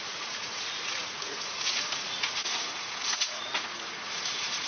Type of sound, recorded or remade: remade